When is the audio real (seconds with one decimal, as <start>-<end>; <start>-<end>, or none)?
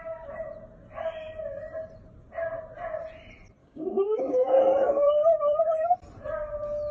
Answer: 0.0-3.6; 4.6-6.9